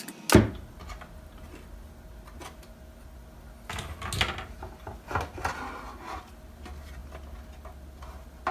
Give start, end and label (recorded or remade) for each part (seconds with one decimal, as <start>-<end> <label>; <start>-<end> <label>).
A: 0.0-8.5 recorded